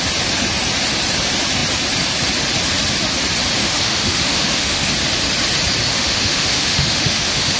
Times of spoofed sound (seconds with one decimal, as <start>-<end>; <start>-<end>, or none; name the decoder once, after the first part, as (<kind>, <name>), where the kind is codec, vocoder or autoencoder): 3.6-4.9 (autoencoder, DAC-VAE); 5.9-7.6